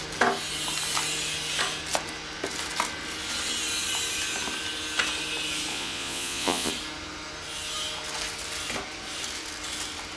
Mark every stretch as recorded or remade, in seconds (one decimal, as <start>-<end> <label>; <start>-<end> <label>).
0.0-5.7 recorded; 5.7-6.7 remade; 6.7-10.2 recorded